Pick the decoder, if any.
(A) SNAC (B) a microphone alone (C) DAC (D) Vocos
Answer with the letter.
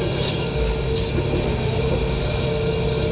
B